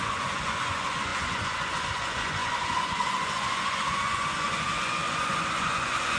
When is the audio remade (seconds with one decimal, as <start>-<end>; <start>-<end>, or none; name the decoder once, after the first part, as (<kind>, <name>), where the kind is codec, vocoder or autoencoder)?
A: 0.0-6.2 (vocoder, Vocos)